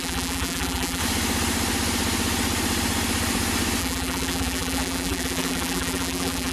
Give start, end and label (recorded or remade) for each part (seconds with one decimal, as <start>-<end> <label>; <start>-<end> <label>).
0.0-1.0 remade; 1.0-3.8 recorded; 3.8-6.5 remade